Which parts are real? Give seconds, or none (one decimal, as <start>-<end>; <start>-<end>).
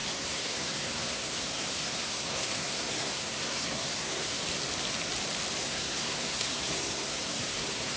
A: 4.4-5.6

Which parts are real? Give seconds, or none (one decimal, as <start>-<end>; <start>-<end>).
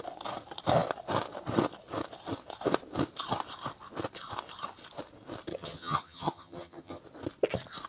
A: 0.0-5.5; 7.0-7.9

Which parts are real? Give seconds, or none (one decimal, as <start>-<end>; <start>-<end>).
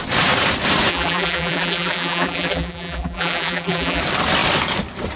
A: 0.0-0.9; 4.0-5.2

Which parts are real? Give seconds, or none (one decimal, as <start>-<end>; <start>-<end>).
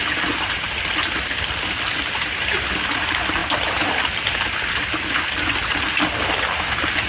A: 0.0-7.1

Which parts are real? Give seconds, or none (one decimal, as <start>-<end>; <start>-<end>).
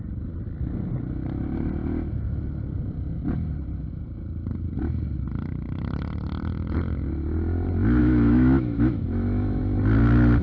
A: 0.0-8.0; 9.6-10.4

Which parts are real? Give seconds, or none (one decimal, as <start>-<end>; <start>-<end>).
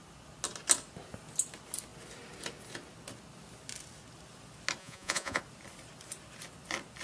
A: 0.0-4.8; 5.4-7.0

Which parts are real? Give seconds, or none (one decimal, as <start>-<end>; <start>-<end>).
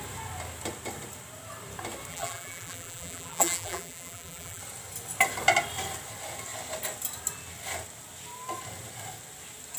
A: 0.0-2.1; 4.6-9.8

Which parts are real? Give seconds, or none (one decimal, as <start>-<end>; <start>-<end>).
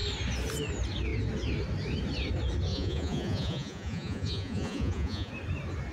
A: 0.0-2.7; 5.3-5.9